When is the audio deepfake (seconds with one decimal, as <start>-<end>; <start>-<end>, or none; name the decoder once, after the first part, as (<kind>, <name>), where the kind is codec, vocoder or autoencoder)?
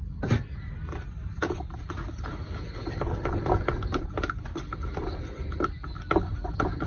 none